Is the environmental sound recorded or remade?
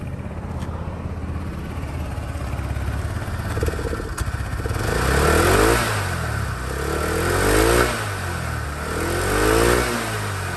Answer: recorded